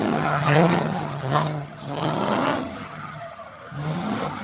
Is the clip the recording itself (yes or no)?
no